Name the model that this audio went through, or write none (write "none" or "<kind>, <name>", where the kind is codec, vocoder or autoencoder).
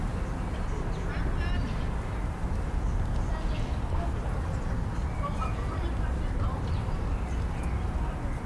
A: none